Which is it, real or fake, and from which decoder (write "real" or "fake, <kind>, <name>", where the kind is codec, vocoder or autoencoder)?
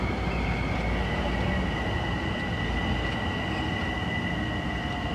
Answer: real